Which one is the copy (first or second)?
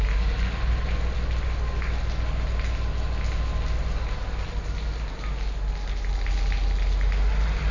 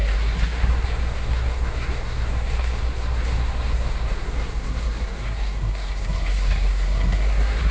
second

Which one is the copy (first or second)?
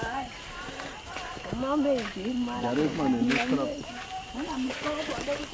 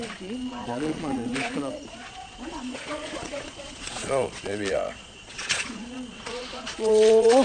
second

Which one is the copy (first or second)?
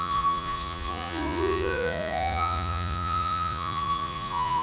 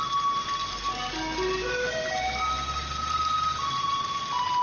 first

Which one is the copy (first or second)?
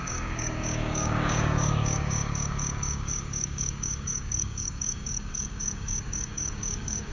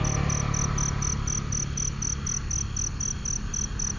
first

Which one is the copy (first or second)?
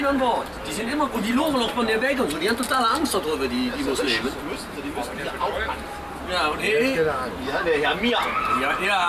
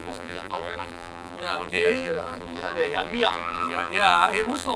second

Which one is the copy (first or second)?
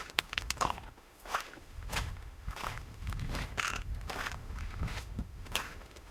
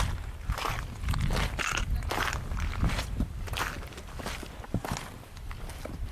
first